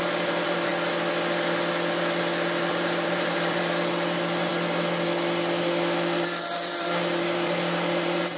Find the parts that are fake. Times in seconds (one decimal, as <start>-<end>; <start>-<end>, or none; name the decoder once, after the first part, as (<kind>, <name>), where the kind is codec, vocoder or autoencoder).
0.0-0.7 (vocoder, BigVGAN v2); 2.7-4.5; 6.4-8.4